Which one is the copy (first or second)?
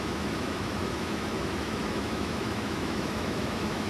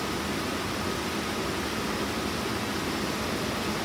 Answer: first